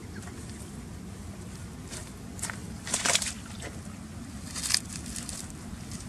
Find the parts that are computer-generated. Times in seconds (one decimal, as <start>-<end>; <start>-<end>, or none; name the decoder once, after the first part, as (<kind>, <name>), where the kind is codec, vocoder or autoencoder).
none